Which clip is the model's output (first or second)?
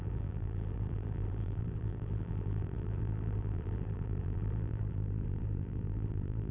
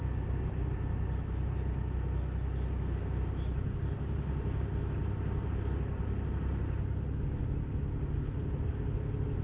first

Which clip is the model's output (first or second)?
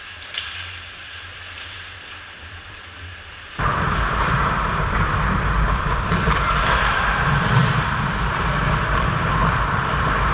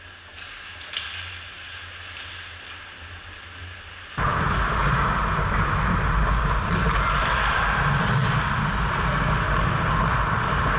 first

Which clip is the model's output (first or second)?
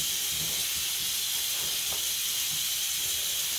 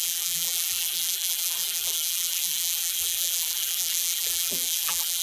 second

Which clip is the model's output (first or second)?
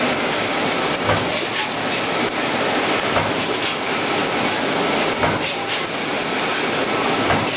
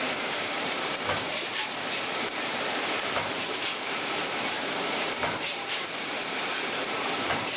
second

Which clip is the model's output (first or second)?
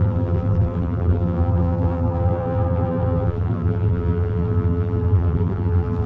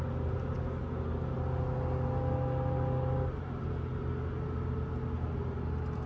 first